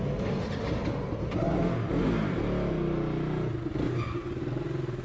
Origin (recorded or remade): recorded